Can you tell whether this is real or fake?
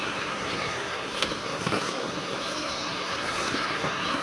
fake